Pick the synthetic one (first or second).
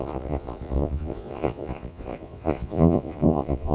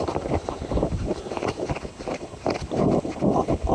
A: first